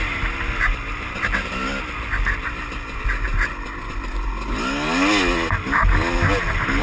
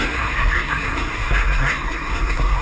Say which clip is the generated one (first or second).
second